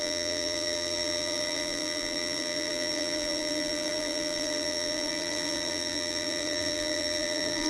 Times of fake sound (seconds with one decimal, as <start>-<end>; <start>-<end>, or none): 0.0-7.7